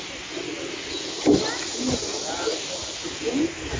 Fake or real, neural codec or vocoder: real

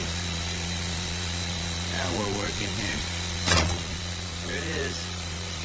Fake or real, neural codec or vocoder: fake, vocoder, Vocos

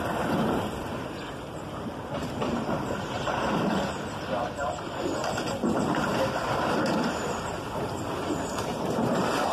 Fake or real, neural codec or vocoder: fake, vocoder, BigVGAN v2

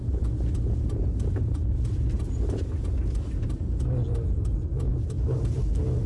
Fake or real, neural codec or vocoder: real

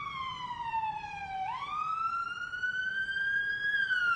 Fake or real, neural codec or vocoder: fake, vocoder, BigVGAN v2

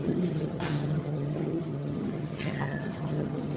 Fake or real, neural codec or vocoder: fake, vocoder, HiFi-GAN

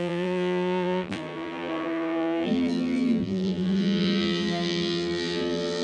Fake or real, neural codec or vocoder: fake, vocoder, BigVGAN v2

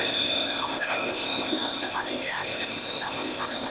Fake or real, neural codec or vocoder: fake, codec, ZipCodec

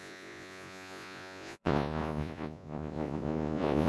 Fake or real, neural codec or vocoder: fake, vocoder, Vocos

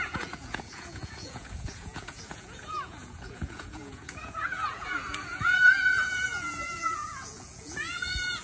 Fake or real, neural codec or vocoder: fake, vocoder, Vocos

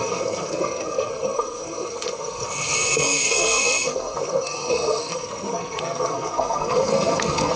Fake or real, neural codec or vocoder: fake, codec, SNAC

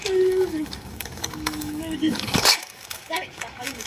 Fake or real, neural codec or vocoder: fake, codec, DAC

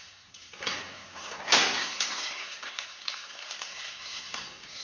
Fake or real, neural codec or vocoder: fake, codec, SNAC